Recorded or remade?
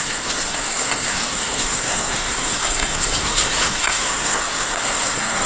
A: remade